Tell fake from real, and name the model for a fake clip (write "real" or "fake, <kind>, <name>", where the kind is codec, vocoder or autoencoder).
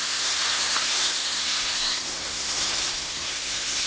fake, codec, SNAC